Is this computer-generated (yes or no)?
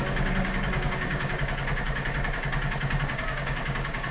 yes